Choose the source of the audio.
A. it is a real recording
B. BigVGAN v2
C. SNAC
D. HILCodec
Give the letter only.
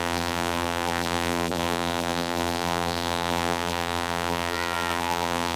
B